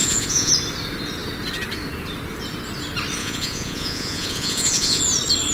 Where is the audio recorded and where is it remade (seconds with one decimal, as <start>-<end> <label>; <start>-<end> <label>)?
0.0-0.5 remade; 0.5-3.2 recorded; 3.2-5.0 remade; 5.0-5.5 recorded